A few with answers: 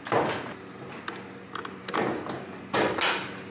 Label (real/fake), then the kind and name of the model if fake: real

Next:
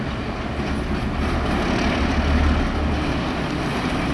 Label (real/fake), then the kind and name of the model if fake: real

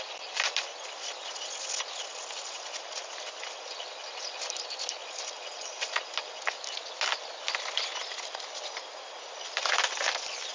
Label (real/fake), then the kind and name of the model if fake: real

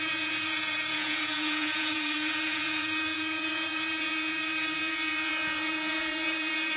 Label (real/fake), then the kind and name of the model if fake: fake, vocoder, Vocos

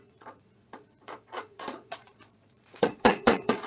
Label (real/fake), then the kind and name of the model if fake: fake, vocoder, Vocos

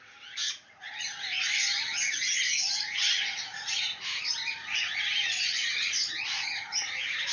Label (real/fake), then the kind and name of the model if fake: fake, vocoder, Vocos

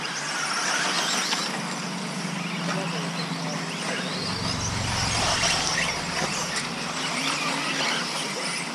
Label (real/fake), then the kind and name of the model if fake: real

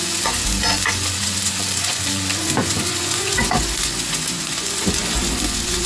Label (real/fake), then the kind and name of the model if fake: fake, vocoder, Vocos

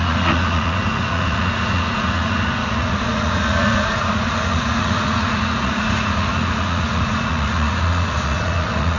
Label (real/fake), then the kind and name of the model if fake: fake, vocoder, Vocos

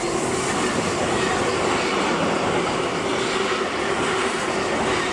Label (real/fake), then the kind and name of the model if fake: real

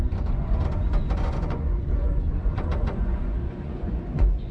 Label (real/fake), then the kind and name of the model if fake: fake, vocoder, Vocos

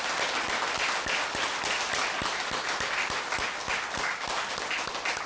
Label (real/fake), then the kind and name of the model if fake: real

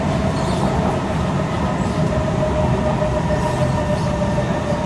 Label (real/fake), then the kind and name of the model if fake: real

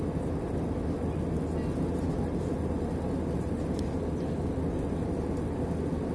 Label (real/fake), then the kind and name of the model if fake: real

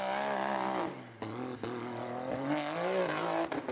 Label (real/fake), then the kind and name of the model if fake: real